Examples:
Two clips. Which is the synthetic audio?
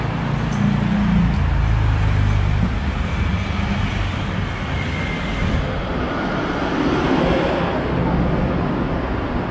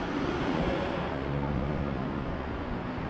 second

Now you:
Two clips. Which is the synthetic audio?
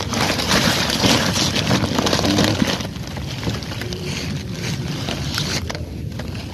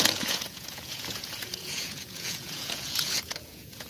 second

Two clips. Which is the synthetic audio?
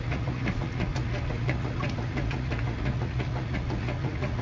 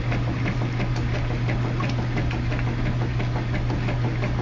first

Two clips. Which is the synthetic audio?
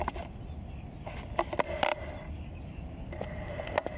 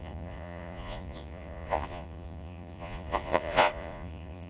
second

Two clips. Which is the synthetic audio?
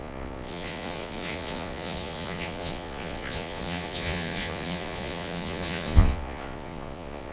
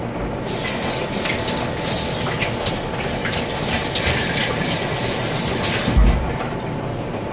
first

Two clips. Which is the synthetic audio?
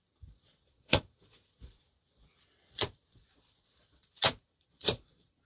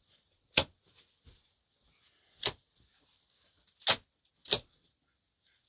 first